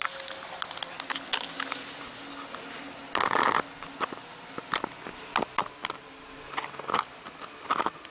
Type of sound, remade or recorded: recorded